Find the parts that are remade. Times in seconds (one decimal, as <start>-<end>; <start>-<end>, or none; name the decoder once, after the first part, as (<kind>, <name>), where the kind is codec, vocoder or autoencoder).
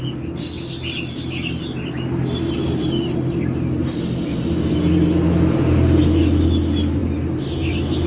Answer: none